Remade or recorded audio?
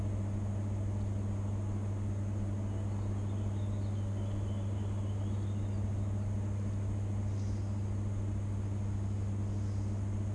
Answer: recorded